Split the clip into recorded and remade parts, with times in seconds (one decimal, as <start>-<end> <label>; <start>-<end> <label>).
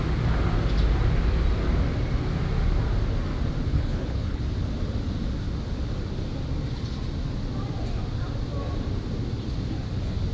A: 0.0-3.7 recorded; 3.7-4.4 remade; 4.4-10.3 recorded